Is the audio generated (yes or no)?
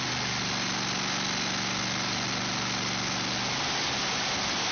no